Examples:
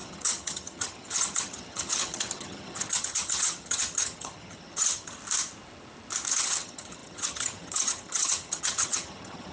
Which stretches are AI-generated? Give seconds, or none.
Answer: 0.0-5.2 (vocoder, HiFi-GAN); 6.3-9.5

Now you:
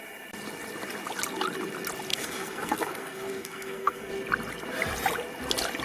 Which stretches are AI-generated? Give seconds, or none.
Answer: 2.1-4.1 (codec, SNAC)

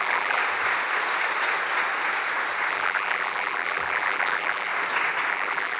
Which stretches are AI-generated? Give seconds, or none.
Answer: 0.0-0.4 (vocoder, BigVGAN v2); 2.7-4.7; 5.3-5.8

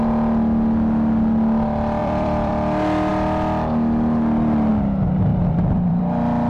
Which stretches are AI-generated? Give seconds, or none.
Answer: 2.0-2.5 (vocoder, BigVGAN v2); 5.3-6.0

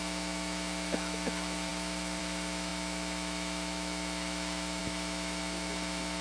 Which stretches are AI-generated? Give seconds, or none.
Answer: 0.0-6.2 (autoencoder, DAC-VAE)

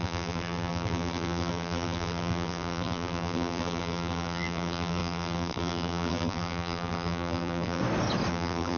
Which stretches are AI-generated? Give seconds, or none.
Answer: 0.0-7.8 (vocoder, BigVGAN v2); 8.3-8.8

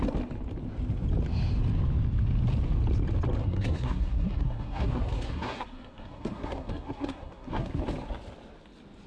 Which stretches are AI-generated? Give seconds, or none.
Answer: 3.4-7.8 (codec, SNAC)